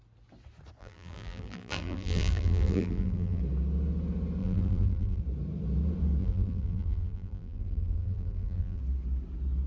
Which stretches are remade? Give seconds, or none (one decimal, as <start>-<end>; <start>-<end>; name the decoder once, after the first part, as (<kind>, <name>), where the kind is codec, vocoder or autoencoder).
0.8-3.4 (vocoder, BigVGAN v2); 4.4-5.2; 6.2-8.8